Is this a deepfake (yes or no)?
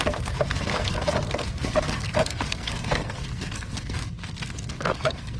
yes